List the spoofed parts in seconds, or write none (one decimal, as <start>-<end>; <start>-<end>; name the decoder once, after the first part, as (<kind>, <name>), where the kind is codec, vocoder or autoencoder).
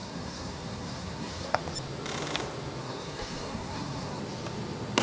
0.0-1.6 (codec, SNAC); 2.8-4.2